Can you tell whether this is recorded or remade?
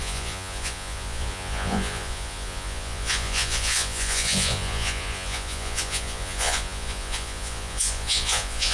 remade